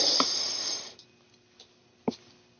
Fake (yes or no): no